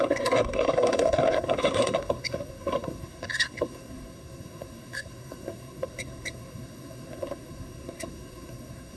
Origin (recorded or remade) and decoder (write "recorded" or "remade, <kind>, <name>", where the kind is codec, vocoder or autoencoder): remade, codec, SNAC